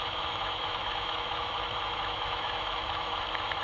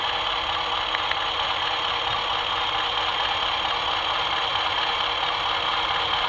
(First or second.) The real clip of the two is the second